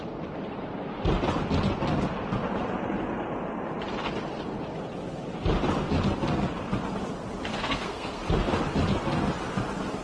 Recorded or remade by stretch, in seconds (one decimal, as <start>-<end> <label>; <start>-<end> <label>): 0.0-7.5 recorded; 7.5-8.2 remade; 8.2-10.0 recorded